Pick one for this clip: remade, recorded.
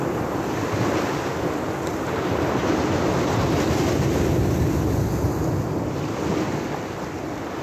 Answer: recorded